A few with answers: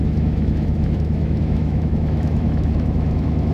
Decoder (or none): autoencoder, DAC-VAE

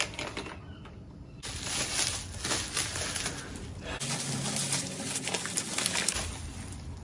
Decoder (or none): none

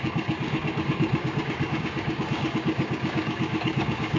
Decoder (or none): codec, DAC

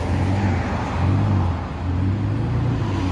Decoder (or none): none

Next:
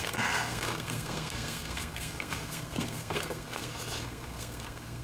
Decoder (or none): codec, SNAC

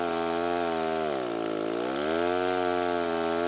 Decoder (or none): none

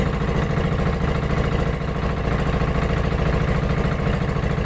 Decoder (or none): none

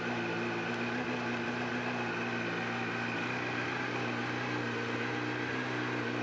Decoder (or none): none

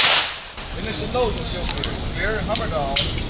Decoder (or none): none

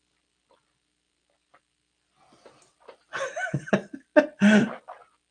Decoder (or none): none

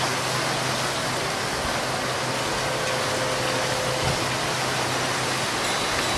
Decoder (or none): none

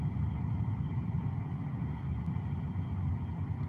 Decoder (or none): none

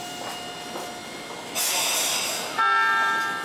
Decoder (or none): none